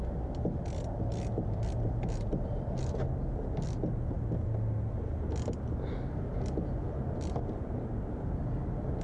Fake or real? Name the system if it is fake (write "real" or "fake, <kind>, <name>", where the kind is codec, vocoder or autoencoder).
real